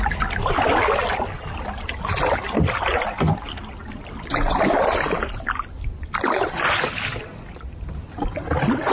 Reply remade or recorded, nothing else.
recorded